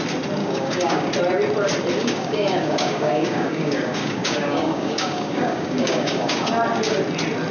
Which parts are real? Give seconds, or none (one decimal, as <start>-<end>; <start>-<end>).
0.0-0.4; 1.1-2.0; 6.5-7.5